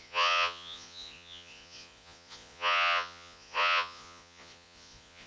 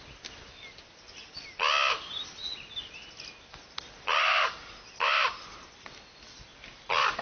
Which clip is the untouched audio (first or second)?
second